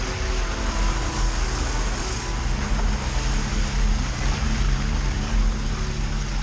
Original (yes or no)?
yes